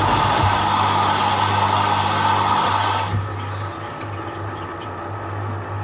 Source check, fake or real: real